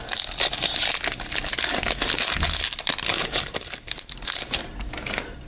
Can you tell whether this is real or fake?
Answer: real